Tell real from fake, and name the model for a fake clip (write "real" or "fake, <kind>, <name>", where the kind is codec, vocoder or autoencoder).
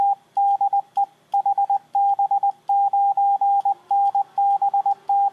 real